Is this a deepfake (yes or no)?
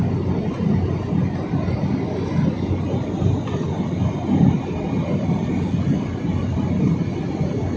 no